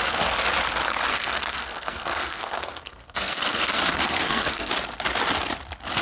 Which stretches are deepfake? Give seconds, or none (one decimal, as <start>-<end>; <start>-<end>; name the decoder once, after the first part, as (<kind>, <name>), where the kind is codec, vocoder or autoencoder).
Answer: 1.1-4.7 (codec, SNAC)